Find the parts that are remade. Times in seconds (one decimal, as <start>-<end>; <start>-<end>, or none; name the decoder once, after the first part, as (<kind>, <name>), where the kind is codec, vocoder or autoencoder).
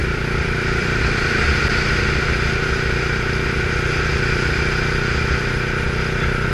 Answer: 0.0-1.0 (vocoder, BigVGAN v2)